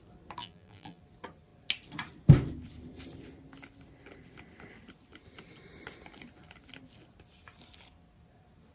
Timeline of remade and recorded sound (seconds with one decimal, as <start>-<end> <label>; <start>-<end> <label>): 0.0-0.4 recorded; 0.4-1.0 remade; 1.0-8.7 recorded